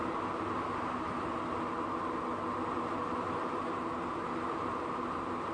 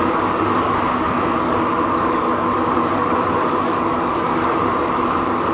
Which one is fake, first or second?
second